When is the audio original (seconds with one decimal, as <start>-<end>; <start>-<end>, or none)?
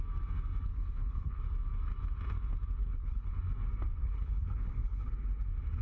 0.0-0.7; 1.4-2.8; 3.4-4.0; 5.1-5.8